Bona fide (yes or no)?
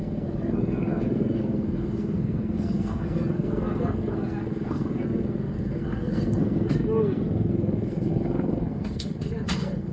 no